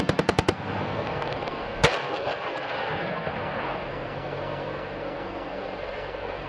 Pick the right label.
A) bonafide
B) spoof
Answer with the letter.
B